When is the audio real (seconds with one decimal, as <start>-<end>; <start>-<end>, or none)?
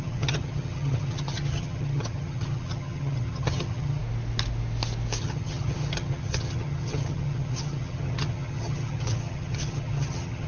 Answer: 4.0-5.2